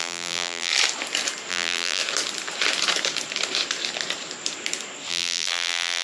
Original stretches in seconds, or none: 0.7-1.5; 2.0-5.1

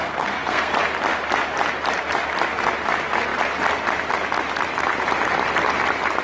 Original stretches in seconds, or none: 0.7-6.2

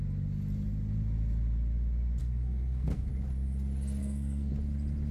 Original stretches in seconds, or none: 0.0-2.2; 3.1-4.0; 4.5-5.1

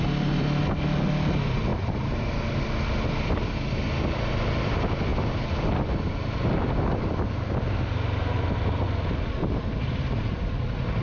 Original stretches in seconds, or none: 0.0-11.0

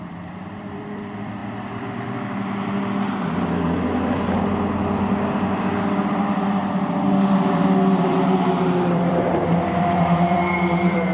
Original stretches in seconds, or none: 1.4-5.8; 6.6-7.3